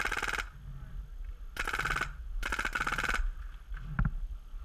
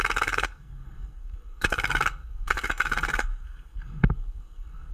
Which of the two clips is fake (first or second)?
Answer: second